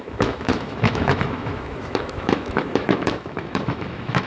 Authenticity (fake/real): fake